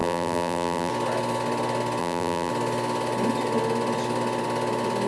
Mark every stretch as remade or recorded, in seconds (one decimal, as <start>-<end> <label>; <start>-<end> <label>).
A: 0.0-0.9 remade; 0.9-2.0 recorded; 2.0-2.5 remade; 2.5-5.1 recorded